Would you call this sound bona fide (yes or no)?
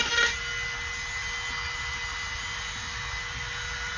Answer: yes